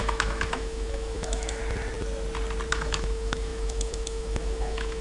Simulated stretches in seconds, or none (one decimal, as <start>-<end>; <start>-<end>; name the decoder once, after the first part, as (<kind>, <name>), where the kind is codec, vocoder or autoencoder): 0.0-1.6 (autoencoder, DAC-VAE); 2.7-5.0